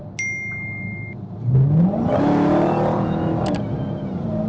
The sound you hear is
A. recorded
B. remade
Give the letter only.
A